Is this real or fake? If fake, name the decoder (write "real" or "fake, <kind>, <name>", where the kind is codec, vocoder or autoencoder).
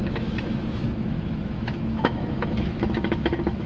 fake, autoencoder, DAC-VAE